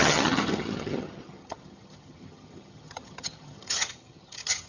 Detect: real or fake fake